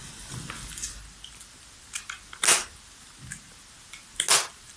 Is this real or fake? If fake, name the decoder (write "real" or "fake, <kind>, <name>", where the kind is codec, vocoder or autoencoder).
real